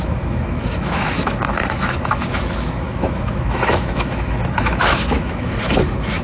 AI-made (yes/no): yes